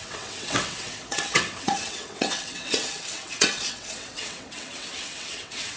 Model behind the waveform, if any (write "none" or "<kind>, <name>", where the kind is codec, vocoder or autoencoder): vocoder, WaveNeXt